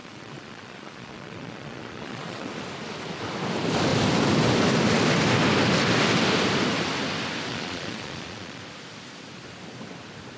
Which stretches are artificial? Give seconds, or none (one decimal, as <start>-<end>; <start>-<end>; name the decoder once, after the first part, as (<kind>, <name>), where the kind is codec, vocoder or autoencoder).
0.0-2.5 (vocoder, Vocos); 7.5-8.6